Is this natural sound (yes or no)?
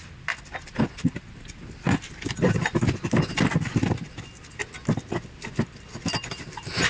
yes